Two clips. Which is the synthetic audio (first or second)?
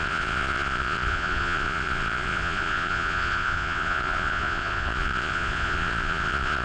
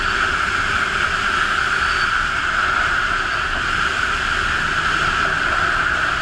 first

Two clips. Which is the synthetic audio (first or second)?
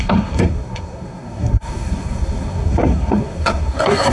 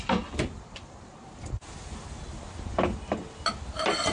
first